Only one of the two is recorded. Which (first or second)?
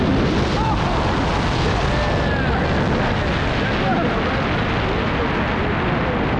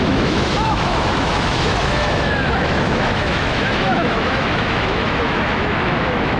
first